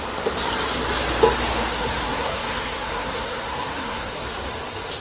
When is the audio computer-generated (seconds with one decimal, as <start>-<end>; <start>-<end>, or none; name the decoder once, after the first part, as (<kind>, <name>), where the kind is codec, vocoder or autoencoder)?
1.7-4.1 (codec, SNAC)